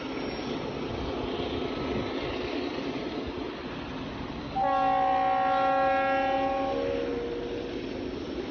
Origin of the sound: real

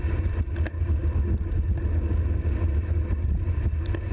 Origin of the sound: real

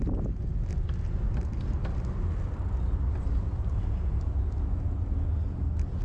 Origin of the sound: real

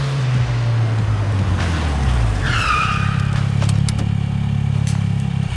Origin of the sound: real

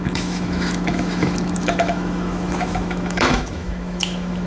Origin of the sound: fake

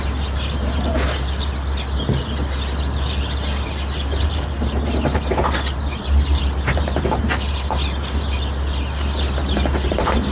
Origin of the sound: real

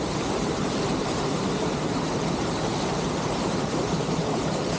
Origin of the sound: fake